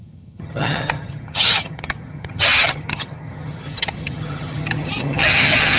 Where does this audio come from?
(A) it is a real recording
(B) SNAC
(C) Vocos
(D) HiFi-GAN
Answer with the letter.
D